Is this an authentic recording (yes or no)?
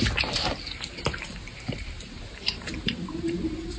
no